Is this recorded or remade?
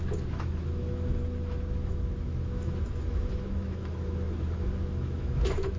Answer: remade